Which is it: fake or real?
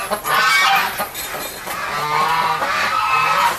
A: real